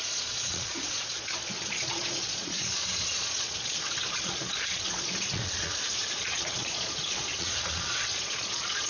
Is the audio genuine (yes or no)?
no